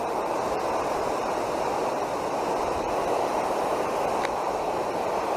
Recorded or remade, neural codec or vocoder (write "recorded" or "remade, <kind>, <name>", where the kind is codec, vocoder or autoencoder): recorded